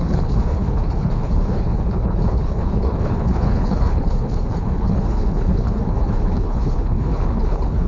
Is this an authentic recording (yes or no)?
no